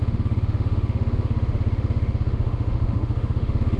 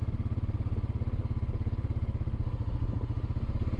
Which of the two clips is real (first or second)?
second